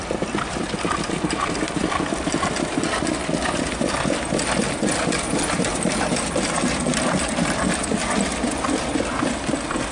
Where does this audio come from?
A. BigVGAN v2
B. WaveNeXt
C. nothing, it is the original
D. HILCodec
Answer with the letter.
C